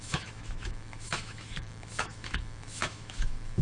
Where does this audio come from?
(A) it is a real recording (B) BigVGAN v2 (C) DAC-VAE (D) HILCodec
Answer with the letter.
C